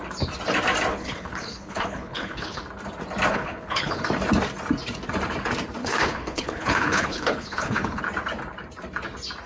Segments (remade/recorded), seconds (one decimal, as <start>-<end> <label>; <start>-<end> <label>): 0.0-0.9 recorded; 0.9-2.6 remade; 2.6-3.3 recorded; 3.3-4.0 remade; 4.0-5.8 recorded; 5.8-8.0 remade; 8.0-9.5 recorded